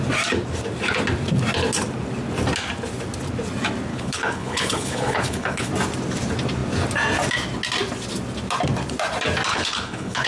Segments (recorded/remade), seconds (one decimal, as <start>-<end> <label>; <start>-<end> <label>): 0.0-3.9 recorded; 3.9-5.7 remade; 5.7-9.5 recorded; 9.5-10.3 remade

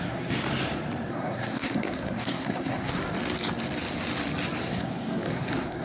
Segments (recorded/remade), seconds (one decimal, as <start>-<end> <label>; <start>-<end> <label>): 0.0-0.4 remade; 0.4-1.1 recorded; 1.1-3.0 remade; 3.0-4.6 recorded; 4.6-5.8 remade

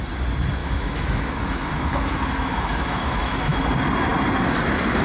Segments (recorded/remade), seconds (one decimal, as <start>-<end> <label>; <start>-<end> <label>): 0.0-0.6 recorded; 0.6-3.6 remade; 3.6-5.0 recorded

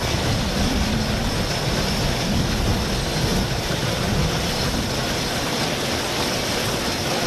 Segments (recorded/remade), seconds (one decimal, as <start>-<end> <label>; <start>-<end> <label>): 0.0-3.3 recorded; 3.3-5.6 remade; 5.6-7.3 recorded

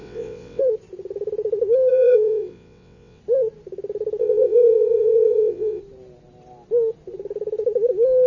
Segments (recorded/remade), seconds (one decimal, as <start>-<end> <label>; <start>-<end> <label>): 0.0-0.6 remade; 0.6-1.9 recorded; 1.9-3.2 remade; 3.2-4.2 recorded; 4.2-5.8 remade; 5.8-8.3 recorded

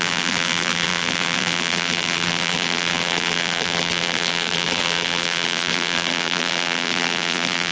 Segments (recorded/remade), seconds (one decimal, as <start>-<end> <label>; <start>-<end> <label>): 0.0-7.7 remade

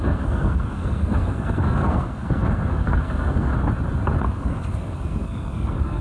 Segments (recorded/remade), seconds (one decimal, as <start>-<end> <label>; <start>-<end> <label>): 0.0-3.5 remade; 3.5-4.2 recorded; 4.2-6.0 remade